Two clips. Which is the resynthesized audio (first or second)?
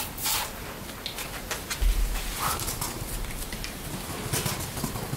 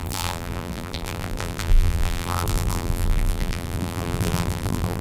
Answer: second